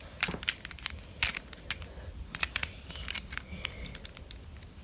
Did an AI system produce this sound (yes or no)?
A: no